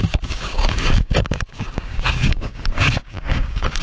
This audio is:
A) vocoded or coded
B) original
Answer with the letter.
A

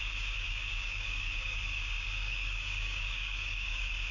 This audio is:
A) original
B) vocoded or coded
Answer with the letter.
B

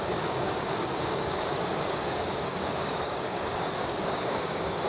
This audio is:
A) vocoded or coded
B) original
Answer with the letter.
A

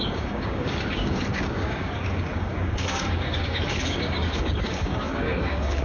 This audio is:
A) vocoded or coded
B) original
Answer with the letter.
A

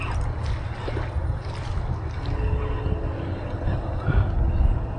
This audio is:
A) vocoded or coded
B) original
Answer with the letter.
B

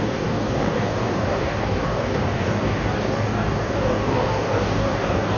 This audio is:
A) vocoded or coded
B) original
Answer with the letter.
A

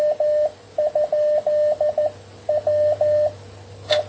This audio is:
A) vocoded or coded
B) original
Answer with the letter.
B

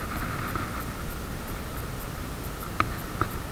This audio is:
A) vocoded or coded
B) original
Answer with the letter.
B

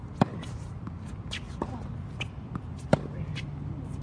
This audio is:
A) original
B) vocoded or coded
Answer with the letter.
A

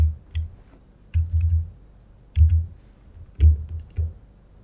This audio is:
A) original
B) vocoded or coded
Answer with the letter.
A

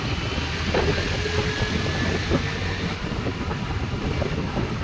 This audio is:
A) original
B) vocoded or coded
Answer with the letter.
A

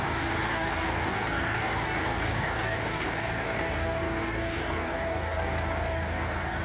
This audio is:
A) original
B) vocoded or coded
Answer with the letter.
B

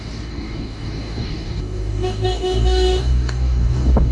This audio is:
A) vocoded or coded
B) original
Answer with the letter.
A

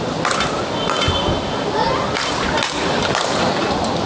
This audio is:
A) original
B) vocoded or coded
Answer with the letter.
A